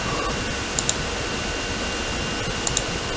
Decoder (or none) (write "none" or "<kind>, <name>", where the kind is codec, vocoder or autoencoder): none